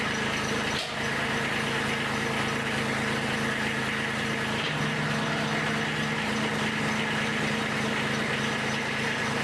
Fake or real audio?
real